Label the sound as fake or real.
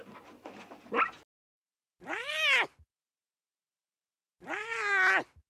real